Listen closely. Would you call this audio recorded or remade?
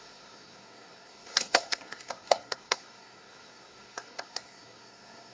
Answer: remade